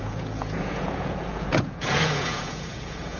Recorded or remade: remade